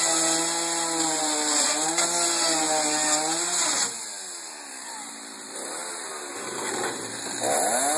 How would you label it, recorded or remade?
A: recorded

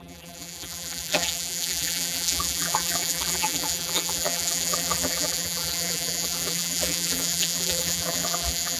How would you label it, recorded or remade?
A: remade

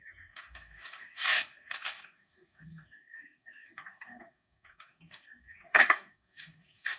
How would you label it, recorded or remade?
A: remade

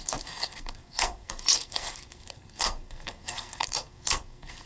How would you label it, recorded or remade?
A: remade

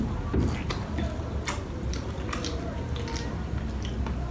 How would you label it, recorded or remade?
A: recorded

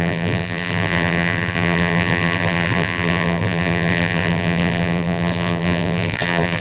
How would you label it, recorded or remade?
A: remade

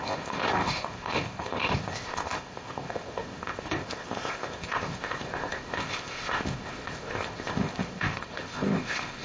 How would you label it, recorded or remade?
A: remade